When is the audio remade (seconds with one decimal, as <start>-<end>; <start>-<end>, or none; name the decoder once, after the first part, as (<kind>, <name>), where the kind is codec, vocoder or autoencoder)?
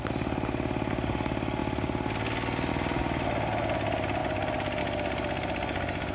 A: none